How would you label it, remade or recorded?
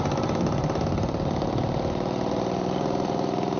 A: recorded